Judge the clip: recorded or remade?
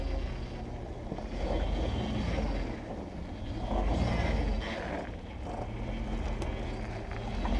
recorded